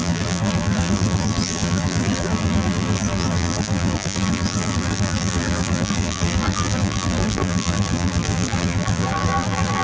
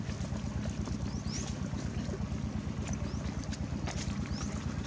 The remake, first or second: first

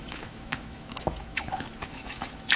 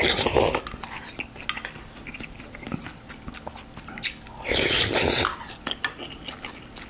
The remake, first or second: first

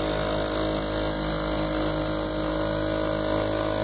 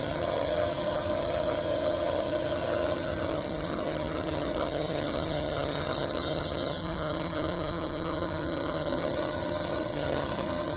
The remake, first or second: second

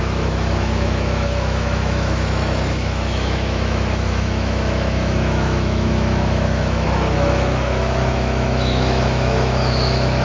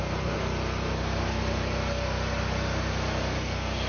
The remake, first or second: first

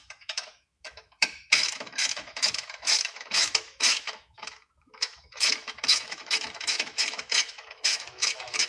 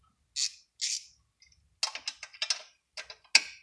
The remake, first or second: first